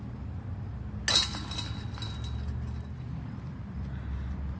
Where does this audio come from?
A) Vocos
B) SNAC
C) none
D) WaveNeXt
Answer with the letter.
C